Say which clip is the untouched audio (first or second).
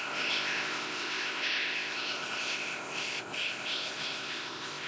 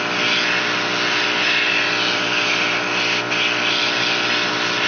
second